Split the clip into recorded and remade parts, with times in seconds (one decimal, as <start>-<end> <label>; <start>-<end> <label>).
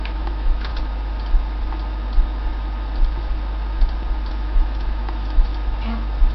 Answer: 0.0-0.7 remade; 0.7-4.3 recorded; 4.3-5.5 remade; 5.5-6.3 recorded